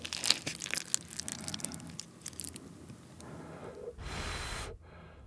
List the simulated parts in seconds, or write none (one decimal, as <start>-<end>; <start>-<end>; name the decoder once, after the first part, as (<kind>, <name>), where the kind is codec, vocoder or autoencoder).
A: none